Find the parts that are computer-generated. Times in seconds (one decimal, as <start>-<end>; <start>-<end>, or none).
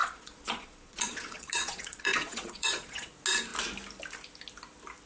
0.0-3.1